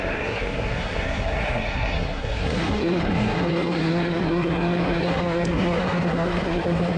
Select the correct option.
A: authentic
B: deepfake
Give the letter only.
B